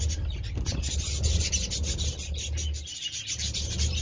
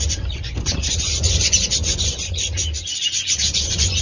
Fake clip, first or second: second